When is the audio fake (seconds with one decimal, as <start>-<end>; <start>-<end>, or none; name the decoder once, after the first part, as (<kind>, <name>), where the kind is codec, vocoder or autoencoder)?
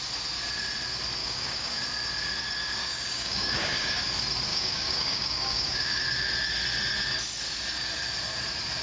1.2-1.8 (codec, DAC); 2.8-4.0; 4.5-6.0